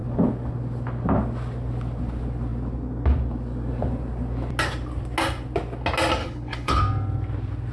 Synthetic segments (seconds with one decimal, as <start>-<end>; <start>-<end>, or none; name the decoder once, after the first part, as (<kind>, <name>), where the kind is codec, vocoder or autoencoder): 6.2-6.8 (codec, HILCodec)